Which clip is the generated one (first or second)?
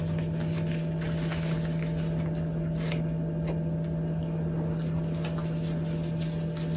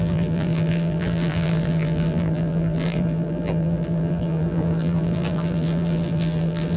second